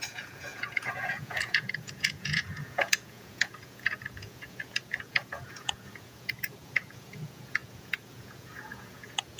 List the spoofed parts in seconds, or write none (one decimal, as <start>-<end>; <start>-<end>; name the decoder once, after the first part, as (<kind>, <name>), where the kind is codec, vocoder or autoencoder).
0.0-9.4 (vocoder, Vocos)